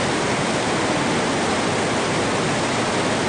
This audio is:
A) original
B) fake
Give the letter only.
A